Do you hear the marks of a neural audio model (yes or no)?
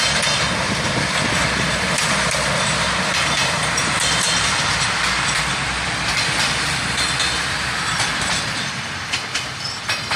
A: no